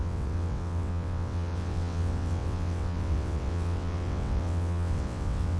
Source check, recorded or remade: remade